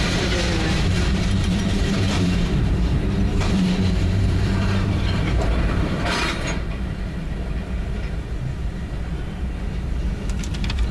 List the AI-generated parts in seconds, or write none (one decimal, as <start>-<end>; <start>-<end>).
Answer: 0.9-2.6; 3.3-6.6